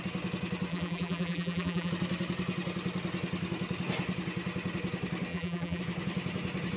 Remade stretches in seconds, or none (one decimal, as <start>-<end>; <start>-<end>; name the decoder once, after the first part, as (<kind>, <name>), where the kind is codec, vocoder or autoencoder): 0.7-1.9 (vocoder, BigVGAN v2); 5.3-5.8